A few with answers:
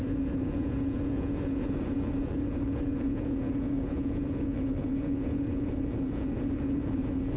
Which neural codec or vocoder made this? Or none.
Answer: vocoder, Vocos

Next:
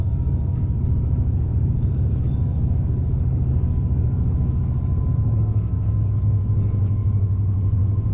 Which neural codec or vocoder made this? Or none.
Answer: codec, DAC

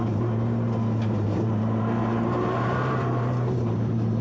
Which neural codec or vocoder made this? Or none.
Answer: vocoder, BigVGAN v2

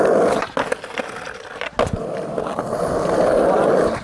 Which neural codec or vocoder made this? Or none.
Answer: none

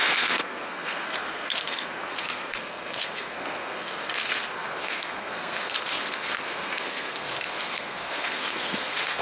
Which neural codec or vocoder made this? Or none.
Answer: codec, SNAC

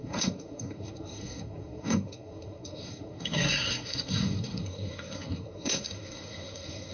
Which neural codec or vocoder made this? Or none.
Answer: codec, SNAC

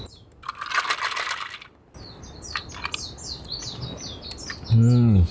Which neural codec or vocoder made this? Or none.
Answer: none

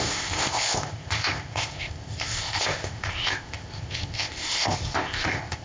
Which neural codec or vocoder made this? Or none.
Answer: codec, ZipCodec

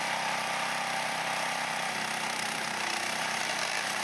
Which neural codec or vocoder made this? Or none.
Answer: vocoder, BigVGAN v2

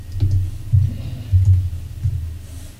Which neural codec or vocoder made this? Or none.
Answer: none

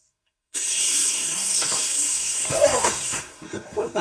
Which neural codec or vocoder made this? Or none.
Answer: codec, SNAC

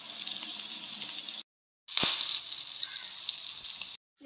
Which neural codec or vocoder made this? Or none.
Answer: none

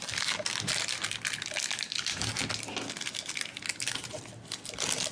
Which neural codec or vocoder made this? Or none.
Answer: none